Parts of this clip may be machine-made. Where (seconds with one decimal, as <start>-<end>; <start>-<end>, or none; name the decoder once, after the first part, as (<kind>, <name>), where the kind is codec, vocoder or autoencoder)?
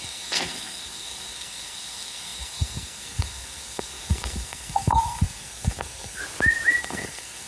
0.0-6.2 (codec, SNAC); 6.8-7.5